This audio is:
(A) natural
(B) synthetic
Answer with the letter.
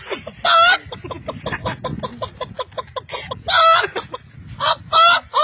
A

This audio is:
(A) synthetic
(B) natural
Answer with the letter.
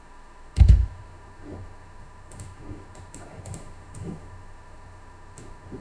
A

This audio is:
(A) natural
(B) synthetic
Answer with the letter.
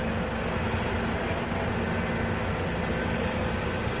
A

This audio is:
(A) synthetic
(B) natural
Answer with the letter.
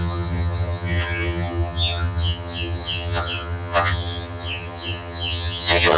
A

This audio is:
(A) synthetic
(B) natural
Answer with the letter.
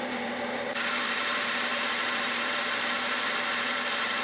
A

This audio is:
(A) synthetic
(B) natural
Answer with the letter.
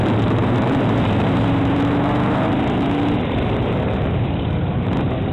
A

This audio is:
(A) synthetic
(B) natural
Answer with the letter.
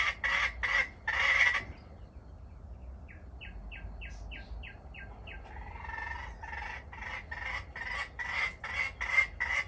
B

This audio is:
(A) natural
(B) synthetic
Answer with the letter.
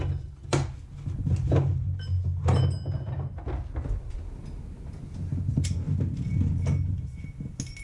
A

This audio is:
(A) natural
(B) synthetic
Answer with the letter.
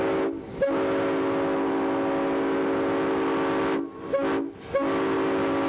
A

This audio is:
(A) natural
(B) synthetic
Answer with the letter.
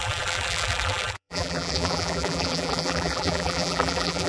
B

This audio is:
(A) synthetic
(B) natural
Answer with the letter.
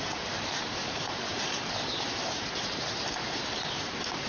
A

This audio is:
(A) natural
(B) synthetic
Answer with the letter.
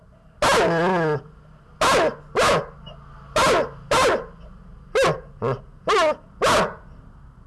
A